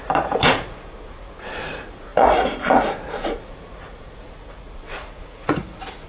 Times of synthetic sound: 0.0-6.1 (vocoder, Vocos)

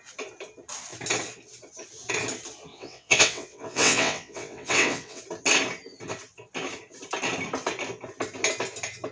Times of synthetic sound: 2.7-5.2 (vocoder, WaveNeXt)

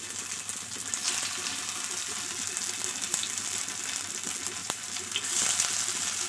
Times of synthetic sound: 4.6-5.1 (vocoder, BigVGAN v2)